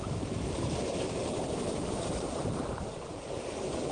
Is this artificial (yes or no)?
yes